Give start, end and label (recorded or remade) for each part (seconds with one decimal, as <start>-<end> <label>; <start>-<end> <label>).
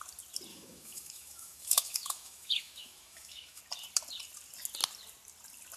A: 0.0-0.5 recorded; 0.5-3.6 remade; 3.6-5.8 recorded